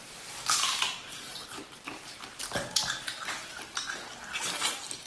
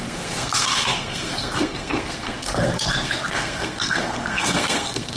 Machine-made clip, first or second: second